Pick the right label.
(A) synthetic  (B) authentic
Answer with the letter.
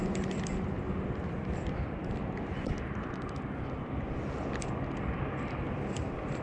B